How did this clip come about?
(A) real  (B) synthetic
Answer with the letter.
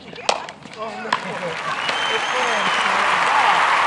A